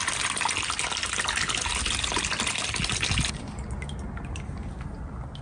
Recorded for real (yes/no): yes